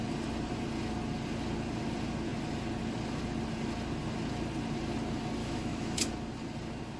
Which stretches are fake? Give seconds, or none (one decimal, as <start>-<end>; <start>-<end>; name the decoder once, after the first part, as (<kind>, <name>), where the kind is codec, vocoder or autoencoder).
5.4-6.1 (autoencoder, DAC-VAE)